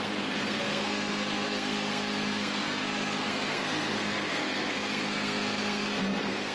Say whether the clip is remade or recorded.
remade